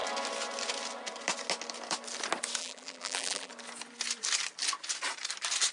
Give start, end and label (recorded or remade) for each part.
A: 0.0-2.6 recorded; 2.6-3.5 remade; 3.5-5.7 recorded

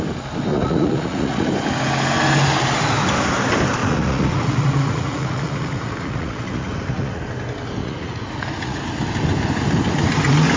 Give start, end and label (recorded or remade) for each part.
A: 0.0-0.5 recorded; 0.5-1.5 remade; 1.5-3.8 recorded; 3.8-7.2 remade; 7.2-7.8 recorded; 7.8-8.8 remade; 8.8-10.6 recorded

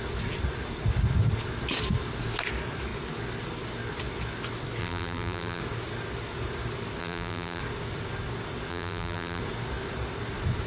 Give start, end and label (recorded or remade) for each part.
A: 0.0-4.8 recorded; 4.8-5.6 remade; 5.6-7.0 recorded; 7.0-7.6 remade; 7.6-8.7 recorded; 8.7-9.4 remade; 9.4-10.7 recorded

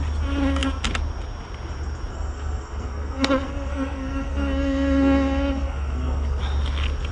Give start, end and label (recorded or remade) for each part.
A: 0.0-2.1 recorded; 2.1-6.4 remade; 6.4-7.1 recorded

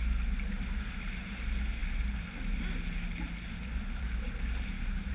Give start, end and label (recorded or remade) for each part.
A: 0.0-5.1 recorded

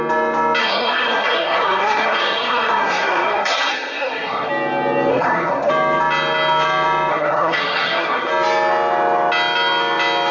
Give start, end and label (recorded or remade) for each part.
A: 0.0-0.6 recorded; 0.6-4.5 remade; 4.5-5.1 recorded; 5.1-5.7 remade; 5.7-7.1 recorded; 7.1-8.3 remade; 8.3-10.3 recorded

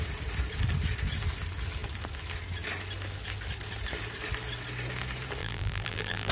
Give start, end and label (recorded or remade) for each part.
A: 0.0-5.4 recorded; 5.4-6.3 remade